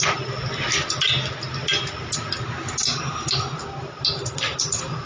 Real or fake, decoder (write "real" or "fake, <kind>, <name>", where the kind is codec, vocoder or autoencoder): real